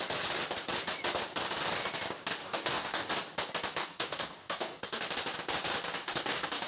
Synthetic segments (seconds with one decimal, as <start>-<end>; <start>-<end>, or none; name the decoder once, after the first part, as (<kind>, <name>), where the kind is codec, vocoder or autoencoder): 2.4-3.1 (codec, DAC); 3.8-5.0; 6.0-6.7